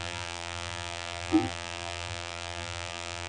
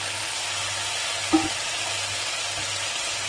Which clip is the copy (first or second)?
first